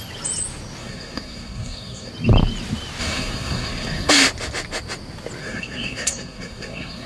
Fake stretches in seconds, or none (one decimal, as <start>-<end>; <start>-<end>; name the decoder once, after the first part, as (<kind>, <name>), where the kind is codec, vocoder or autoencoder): 0.8-2.1 (codec, SNAC); 3.0-4.1; 5.4-7.1